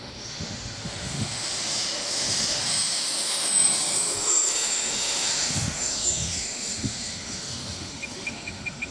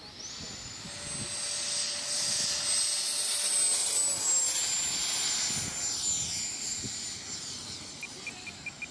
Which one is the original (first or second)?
second